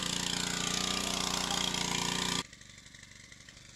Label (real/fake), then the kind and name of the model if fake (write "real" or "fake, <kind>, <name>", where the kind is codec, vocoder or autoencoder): real